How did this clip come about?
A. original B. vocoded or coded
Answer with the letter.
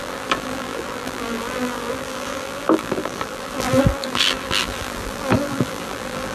B